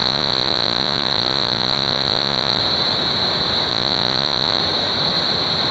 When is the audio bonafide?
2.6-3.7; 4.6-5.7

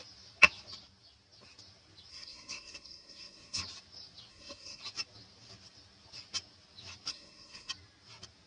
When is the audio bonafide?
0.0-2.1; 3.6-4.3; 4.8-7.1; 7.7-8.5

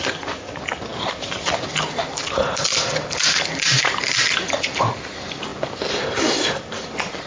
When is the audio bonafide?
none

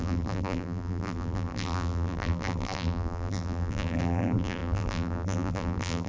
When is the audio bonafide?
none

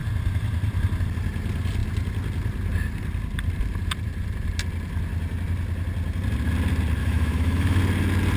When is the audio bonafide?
0.0-7.0; 7.8-8.4

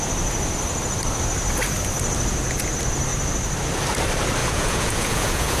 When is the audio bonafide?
0.0-4.4